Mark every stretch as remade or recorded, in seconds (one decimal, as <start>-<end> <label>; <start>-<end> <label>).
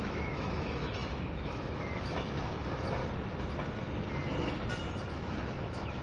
0.0-3.0 remade; 3.0-5.1 recorded; 5.1-6.0 remade